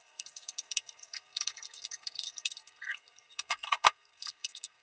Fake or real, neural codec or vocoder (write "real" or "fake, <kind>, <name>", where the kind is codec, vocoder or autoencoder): fake, codec, SNAC